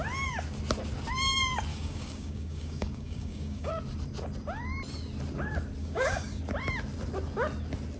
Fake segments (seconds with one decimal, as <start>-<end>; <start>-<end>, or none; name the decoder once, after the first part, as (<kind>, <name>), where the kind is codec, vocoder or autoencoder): 1.7-3.7 (codec, DAC); 5.8-6.4